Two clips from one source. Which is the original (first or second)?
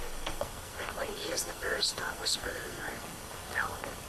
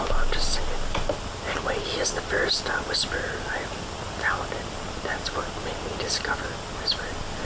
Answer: second